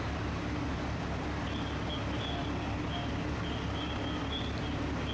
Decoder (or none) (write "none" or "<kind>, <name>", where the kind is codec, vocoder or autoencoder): none